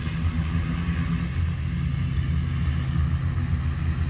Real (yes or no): yes